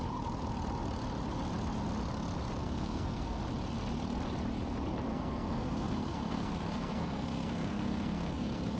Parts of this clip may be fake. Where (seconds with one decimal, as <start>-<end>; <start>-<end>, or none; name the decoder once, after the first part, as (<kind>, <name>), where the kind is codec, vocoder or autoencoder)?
2.6-3.4 (codec, SNAC); 5.1-8.8